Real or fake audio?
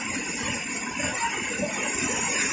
real